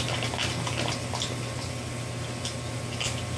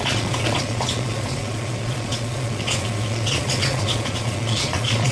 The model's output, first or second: second